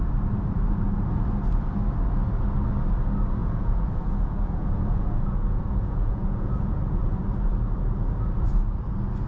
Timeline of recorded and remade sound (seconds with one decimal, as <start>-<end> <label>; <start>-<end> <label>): 0.0-3.4 recorded; 3.4-7.2 remade; 7.2-9.3 recorded